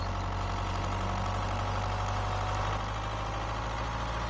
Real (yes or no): yes